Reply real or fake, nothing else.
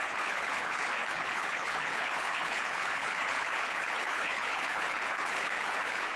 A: fake